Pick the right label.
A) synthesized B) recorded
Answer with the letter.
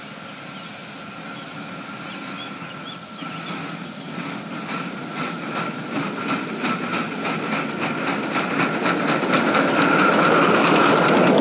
B